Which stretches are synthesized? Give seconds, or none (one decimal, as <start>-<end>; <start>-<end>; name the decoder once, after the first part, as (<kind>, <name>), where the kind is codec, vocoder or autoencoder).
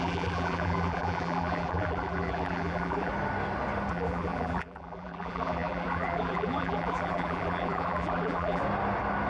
0.0-3.1 (vocoder, BigVGAN v2); 3.9-8.6